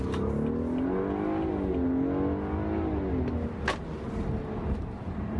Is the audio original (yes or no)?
yes